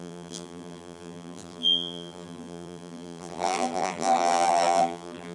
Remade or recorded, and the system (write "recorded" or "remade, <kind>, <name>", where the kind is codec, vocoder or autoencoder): remade, vocoder, BigVGAN v2